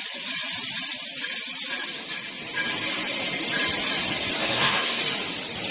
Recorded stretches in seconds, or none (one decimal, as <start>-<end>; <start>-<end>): 0.0-4.4; 5.0-5.7